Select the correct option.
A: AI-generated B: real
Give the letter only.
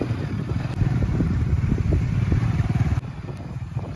A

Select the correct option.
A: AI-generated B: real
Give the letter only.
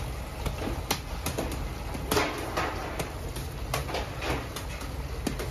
B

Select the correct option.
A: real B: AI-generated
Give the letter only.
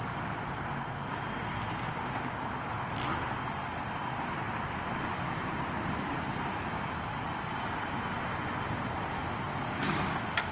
A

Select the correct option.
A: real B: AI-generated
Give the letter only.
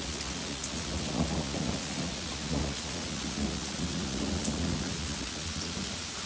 B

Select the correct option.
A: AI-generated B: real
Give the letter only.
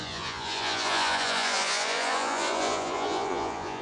A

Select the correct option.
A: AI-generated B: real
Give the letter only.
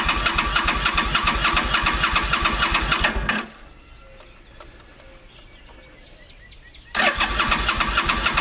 B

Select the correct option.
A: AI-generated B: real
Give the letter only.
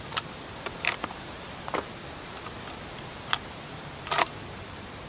A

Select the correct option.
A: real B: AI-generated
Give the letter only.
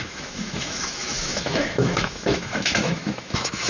B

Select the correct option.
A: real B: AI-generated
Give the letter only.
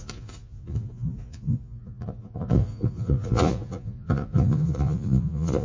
B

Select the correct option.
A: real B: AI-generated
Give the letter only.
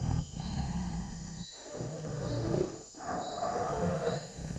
B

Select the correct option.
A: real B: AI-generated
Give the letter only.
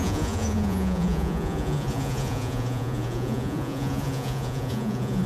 B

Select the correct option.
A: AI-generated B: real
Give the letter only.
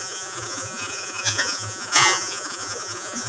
A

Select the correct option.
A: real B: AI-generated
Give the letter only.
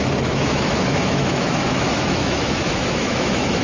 B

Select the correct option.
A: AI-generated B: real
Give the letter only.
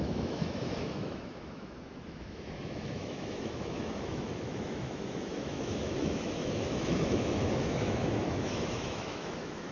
A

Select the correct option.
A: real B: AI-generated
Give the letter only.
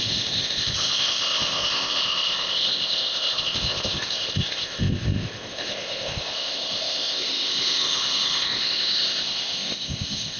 B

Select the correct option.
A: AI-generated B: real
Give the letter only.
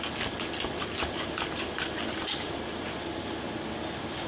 B